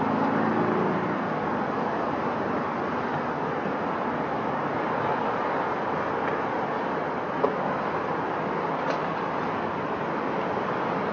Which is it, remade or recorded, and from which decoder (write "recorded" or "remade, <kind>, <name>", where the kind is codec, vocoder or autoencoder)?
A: recorded